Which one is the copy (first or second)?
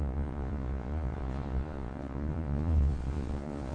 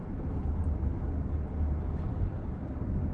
first